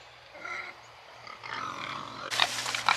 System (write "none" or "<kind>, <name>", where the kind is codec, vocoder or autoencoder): vocoder, BigVGAN v2